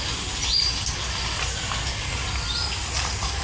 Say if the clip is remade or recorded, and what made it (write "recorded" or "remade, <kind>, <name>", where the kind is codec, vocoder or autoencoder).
recorded